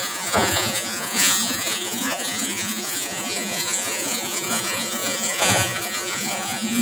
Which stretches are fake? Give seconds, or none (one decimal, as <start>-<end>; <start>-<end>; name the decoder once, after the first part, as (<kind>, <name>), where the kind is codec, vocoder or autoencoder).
0.0-6.8 (vocoder, Vocos)